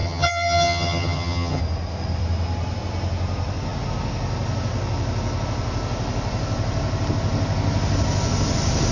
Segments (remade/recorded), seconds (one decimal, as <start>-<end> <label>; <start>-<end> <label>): 0.0-1.6 remade; 1.6-8.9 recorded